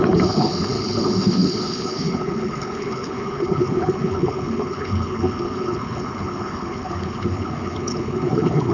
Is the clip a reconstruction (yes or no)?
yes